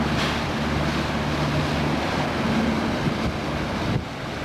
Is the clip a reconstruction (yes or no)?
no